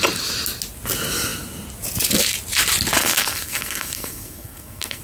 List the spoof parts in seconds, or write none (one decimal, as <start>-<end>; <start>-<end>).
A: 3.0-5.0